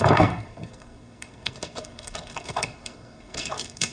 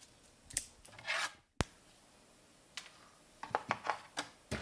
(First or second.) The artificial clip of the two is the first